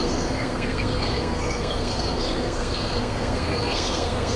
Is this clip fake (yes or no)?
yes